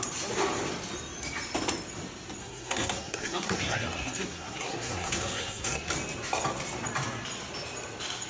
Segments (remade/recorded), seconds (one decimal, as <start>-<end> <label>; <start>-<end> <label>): 0.0-2.4 recorded; 2.4-5.9 remade; 5.9-8.3 recorded